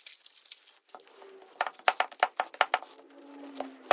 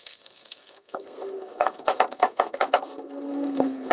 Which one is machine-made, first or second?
second